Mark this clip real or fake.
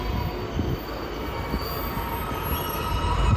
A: real